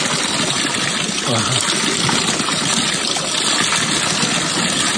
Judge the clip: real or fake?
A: real